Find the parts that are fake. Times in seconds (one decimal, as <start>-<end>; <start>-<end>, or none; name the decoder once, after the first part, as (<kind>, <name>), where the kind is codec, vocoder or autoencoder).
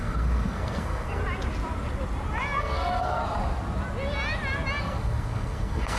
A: 0.0-1.2 (codec, SNAC); 2.6-3.2; 4.8-6.0